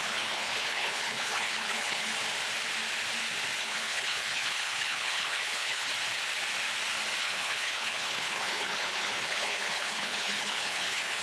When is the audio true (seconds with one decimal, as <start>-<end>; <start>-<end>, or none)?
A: 2.1-3.6; 5.9-7.2